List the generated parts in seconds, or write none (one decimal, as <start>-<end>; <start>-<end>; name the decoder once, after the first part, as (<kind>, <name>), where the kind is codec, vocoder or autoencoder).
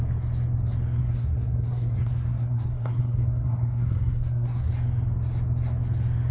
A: 1.0-4.7 (codec, SNAC)